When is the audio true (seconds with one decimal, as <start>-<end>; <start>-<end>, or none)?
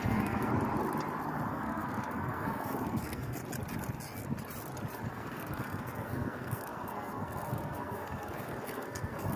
0.5-1.5; 3.4-5.1